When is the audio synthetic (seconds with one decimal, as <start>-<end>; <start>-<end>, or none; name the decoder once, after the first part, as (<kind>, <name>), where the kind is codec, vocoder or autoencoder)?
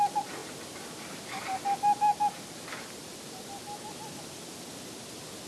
none